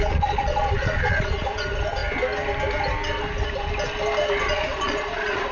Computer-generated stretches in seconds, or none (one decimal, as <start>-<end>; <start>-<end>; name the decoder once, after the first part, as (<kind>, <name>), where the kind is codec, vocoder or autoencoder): 0.0-2.0 (vocoder, Vocos); 4.4-5.5